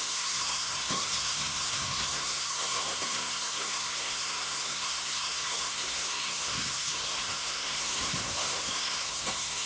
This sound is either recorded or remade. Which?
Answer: remade